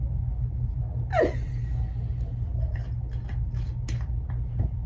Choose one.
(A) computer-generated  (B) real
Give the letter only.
B